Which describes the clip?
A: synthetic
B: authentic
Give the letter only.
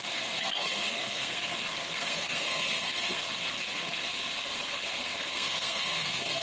A